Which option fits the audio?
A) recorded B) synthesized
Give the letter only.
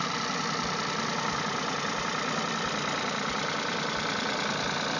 A